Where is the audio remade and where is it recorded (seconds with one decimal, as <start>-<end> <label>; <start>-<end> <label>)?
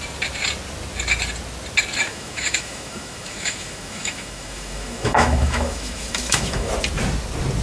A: 0.0-2.1 recorded; 2.1-6.7 remade; 6.7-7.6 recorded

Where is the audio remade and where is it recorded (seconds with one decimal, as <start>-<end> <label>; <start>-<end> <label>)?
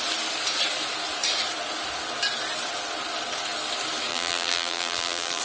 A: 0.0-4.1 recorded; 4.1-5.4 remade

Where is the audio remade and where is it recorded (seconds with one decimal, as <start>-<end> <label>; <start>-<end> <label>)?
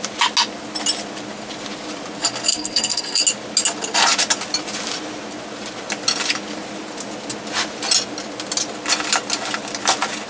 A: 0.0-2.5 recorded; 2.5-3.2 remade; 3.2-10.3 recorded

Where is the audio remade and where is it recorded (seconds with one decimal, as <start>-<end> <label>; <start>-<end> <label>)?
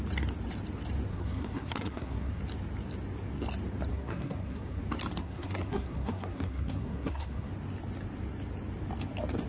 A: 0.0-1.1 recorded; 1.1-2.4 remade; 2.4-3.9 recorded; 3.9-4.8 remade; 4.8-5.2 recorded; 5.2-7.5 remade; 7.5-9.5 recorded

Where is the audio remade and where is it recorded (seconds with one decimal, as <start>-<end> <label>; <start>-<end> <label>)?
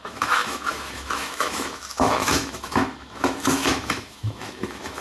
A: 0.0-5.0 remade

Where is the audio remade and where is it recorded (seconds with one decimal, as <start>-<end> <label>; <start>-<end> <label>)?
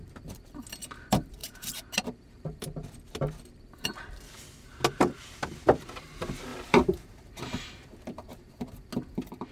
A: 0.0-1.4 recorded; 1.4-3.1 remade; 3.1-6.5 recorded; 6.5-8.9 remade; 8.9-9.5 recorded